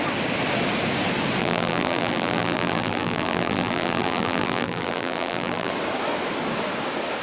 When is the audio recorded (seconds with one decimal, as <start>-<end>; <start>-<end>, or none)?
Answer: 0.0-1.4; 5.7-7.2